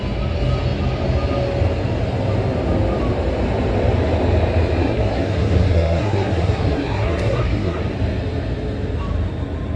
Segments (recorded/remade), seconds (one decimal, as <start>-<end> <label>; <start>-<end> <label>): 0.0-4.8 recorded; 4.8-7.8 remade; 7.8-9.8 recorded